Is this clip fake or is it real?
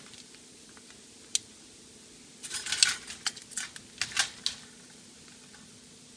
real